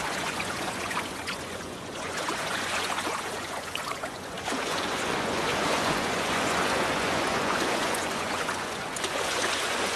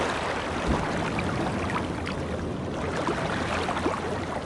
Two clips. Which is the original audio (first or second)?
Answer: second